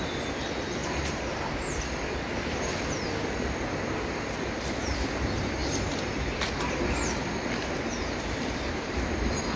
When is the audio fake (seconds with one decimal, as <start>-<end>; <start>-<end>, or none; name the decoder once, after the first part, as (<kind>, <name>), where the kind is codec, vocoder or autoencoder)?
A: 0.8-1.7 (vocoder, BigVGAN v2)